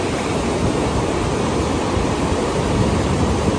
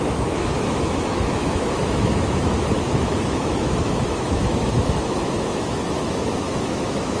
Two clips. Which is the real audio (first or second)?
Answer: first